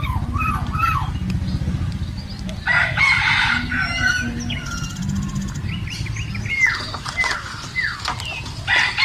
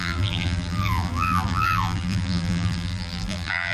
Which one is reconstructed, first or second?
second